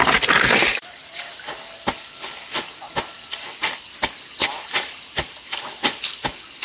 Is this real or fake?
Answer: real